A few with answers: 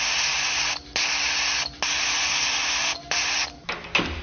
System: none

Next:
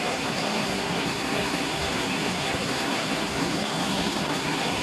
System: codec, SNAC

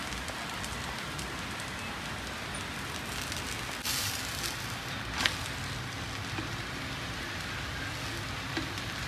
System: none